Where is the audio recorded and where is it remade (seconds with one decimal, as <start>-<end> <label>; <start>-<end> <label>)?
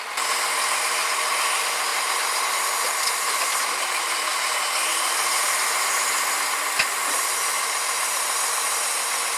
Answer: 0.0-4.3 recorded; 4.3-4.9 remade; 4.9-7.5 recorded; 7.5-8.2 remade; 8.2-9.4 recorded